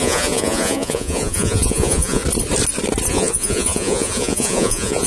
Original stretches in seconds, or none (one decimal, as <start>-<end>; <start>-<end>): 2.2-3.1

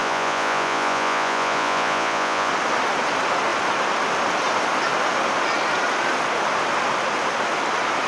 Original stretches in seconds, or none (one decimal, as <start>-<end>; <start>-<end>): 2.5-8.1

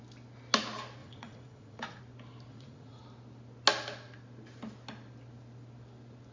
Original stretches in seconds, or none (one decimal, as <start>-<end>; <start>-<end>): 0.0-1.0; 2.0-2.5; 3.0-6.3

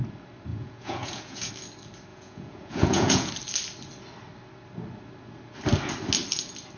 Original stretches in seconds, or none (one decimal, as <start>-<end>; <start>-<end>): 0.0-0.5; 1.5-2.1; 3.3-6.8

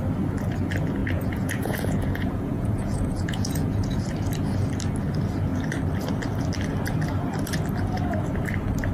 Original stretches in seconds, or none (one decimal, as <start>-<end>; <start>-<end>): 0.0-1.0; 4.0-8.9